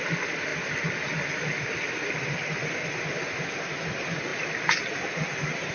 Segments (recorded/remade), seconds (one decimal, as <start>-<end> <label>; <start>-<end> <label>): 0.0-5.7 recorded